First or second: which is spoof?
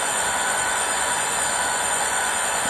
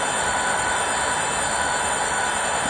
first